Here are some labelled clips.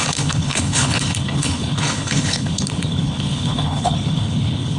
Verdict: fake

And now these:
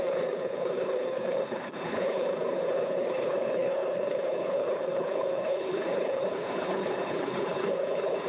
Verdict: fake